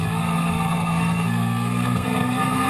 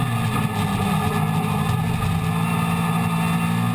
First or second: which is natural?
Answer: second